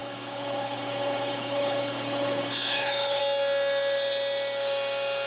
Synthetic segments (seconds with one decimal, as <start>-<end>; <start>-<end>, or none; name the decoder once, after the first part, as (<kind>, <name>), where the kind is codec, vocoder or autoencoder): 0.0-3.2 (codec, HILCodec)